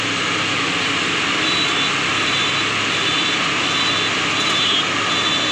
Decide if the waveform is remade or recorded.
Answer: recorded